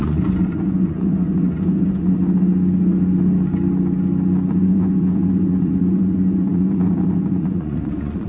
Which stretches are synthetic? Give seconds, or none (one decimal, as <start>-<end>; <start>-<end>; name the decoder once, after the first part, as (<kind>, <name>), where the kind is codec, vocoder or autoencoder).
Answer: 0.0-2.2 (vocoder, Vocos); 4.5-8.3

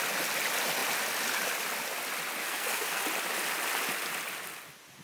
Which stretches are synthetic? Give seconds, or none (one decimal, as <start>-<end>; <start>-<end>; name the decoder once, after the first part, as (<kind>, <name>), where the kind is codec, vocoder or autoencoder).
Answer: 2.4-3.0 (codec, SNAC)

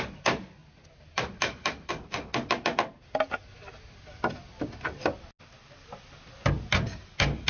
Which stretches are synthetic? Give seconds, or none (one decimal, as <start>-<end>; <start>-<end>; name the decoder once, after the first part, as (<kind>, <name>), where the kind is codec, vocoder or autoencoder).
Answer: 0.6-1.9 (vocoder, BigVGAN v2)

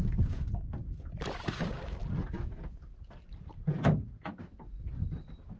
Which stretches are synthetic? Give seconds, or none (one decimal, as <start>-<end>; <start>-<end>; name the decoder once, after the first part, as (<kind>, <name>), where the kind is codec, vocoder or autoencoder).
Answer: 0.0-0.8 (codec, DAC); 1.5-2.0